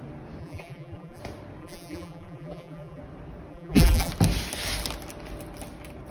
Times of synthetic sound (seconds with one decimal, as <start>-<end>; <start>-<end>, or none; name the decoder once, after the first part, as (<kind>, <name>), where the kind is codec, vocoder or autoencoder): 0.4-1.2 (vocoder, BigVGAN v2); 1.6-3.0; 3.5-4.1